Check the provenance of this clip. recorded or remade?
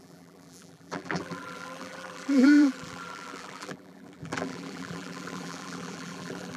remade